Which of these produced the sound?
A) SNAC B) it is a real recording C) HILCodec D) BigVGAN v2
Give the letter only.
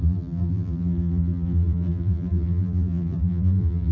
D